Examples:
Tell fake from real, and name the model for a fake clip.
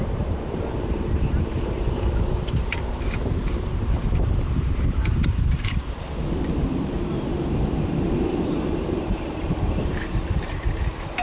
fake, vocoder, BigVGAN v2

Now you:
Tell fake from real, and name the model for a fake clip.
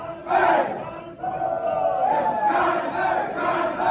real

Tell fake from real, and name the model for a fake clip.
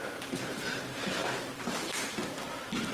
fake, vocoder, BigVGAN v2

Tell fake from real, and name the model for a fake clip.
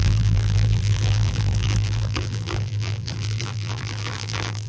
fake, vocoder, BigVGAN v2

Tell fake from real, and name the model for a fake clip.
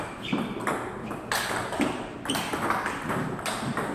real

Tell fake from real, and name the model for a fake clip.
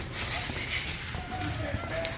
real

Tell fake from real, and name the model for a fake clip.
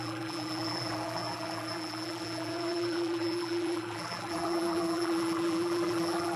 fake, vocoder, BigVGAN v2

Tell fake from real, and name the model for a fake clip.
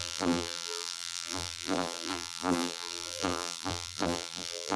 fake, vocoder, BigVGAN v2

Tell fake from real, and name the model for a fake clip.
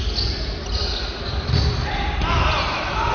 real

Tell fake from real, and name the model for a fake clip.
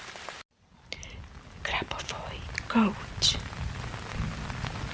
real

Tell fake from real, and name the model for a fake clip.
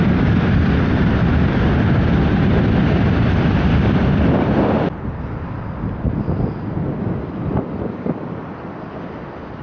fake, vocoder, BigVGAN v2